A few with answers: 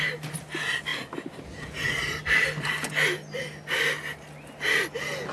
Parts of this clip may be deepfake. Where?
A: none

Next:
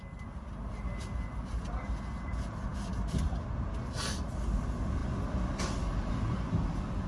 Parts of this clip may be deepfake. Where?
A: 2.7-3.4 (vocoder, BigVGAN v2)

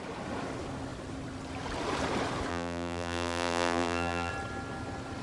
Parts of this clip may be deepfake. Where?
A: 2.5-4.3 (vocoder, BigVGAN v2)

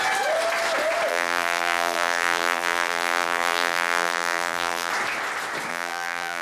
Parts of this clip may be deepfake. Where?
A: 1.1-4.9 (vocoder, BigVGAN v2); 5.7-6.4

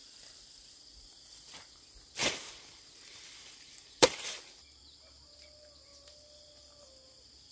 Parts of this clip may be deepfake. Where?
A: 0.0-0.7 (vocoder, BigVGAN v2); 2.2-4.8

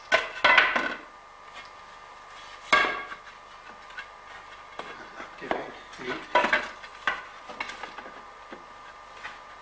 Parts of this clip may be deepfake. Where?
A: 6.9-7.5 (vocoder, BigVGAN v2)